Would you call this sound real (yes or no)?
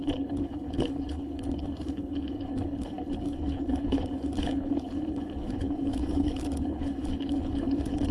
no